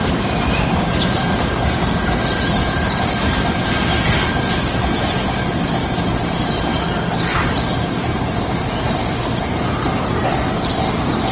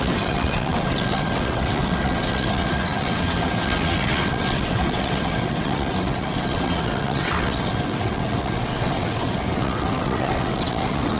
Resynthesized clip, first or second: second